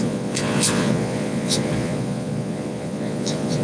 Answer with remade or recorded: remade